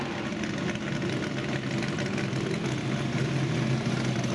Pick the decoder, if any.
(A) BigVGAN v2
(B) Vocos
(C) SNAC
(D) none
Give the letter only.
D